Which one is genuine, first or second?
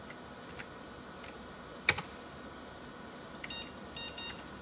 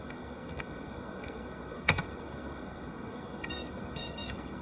first